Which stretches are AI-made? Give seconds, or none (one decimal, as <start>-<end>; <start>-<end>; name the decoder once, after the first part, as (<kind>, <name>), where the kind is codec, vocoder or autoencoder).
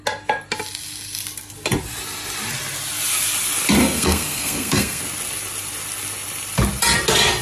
3.8-5.0 (codec, SNAC)